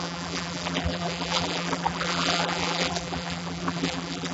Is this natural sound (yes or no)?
no